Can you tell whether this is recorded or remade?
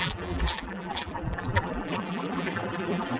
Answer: remade